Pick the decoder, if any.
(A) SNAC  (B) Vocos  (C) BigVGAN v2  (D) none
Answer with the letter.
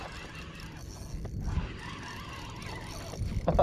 D